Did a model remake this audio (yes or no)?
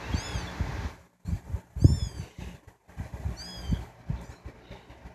no